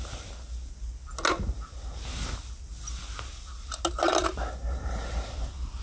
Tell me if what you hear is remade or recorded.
recorded